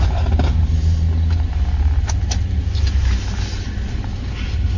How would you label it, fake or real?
real